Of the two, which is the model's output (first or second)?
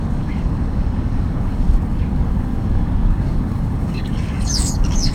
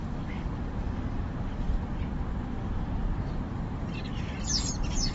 first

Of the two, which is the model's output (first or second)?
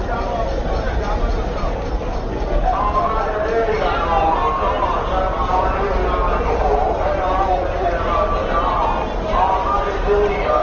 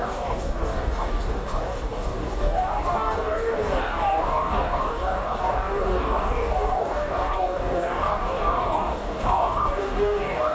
second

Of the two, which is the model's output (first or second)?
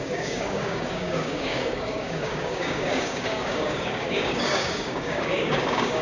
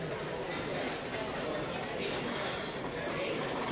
first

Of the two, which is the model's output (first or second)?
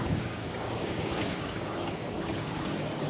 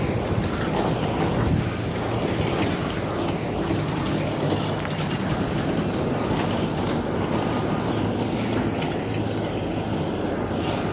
first